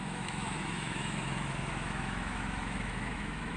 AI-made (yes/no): yes